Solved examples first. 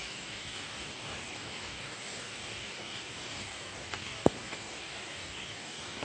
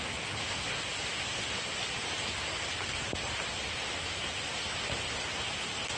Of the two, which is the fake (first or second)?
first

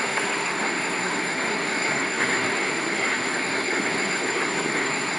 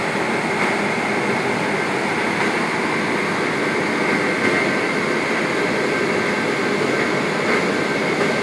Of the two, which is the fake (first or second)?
first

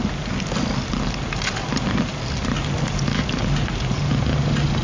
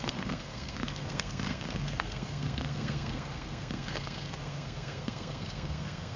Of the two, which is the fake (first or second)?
second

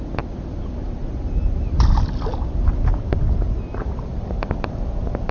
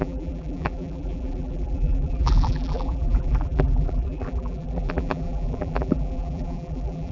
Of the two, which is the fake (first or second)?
second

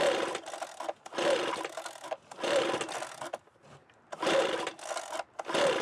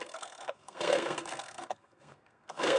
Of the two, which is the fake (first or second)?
second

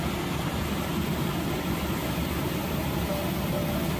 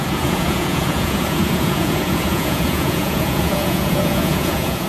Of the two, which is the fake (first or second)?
second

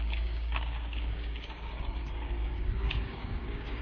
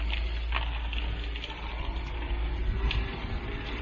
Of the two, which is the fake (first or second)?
first